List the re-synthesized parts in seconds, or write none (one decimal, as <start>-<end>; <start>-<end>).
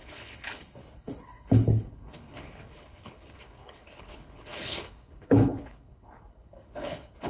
0.0-7.3